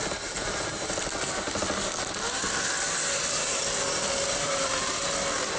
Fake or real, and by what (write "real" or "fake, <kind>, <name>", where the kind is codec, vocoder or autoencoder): real